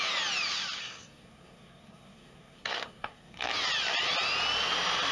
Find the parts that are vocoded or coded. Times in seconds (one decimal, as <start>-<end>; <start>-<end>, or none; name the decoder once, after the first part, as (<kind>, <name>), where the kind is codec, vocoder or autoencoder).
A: 0.8-3.5 (codec, SNAC)